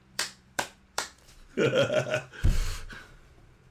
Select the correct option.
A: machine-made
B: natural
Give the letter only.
A